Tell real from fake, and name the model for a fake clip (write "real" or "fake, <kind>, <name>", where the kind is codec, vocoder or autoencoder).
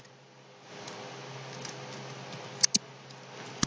real